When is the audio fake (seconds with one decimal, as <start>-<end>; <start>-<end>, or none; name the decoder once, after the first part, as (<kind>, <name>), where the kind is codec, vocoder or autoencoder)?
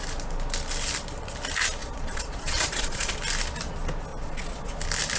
1.8-3.2 (vocoder, Vocos); 4.1-4.7